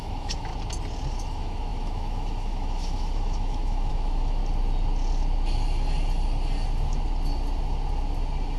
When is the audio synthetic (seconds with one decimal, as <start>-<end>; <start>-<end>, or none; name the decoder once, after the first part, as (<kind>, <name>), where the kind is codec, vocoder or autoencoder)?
0.0-0.5 (autoencoder, DAC-VAE); 1.1-4.4